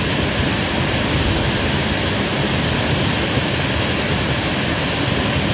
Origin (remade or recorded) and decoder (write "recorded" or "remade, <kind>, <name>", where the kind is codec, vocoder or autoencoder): recorded